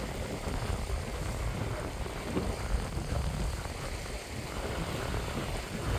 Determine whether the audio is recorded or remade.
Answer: recorded